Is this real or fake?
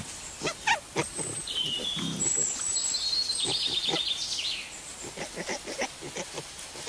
real